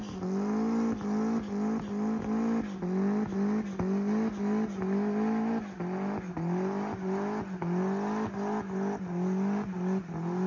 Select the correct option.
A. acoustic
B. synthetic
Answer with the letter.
A